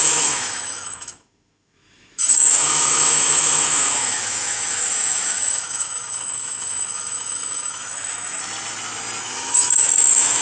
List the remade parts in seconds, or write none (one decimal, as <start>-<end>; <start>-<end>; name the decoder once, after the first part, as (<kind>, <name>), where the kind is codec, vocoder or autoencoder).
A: 0.0-8.4 (autoencoder, DAC-VAE); 9.2-10.4